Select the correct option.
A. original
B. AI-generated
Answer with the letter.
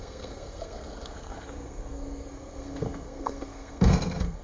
B